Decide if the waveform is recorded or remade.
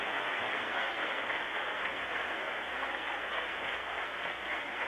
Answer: remade